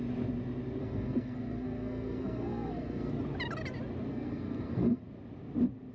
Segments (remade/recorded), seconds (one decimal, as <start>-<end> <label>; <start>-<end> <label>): 0.0-0.8 recorded; 0.8-3.1 remade; 3.1-4.1 recorded; 4.1-5.0 remade; 5.0-5.9 recorded